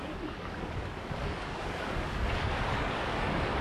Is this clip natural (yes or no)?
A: no